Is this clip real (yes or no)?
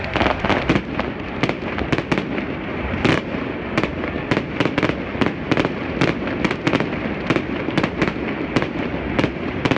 yes